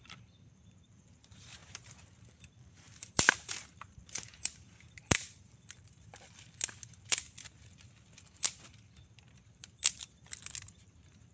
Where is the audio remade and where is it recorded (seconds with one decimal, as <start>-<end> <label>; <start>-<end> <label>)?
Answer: 0.0-6.1 remade; 6.1-9.3 recorded; 9.3-10.0 remade; 10.0-10.8 recorded; 10.8-11.3 remade